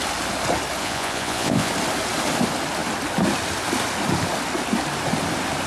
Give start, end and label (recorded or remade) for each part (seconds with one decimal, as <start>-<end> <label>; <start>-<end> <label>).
0.0-0.8 recorded; 0.8-1.7 remade; 1.7-5.7 recorded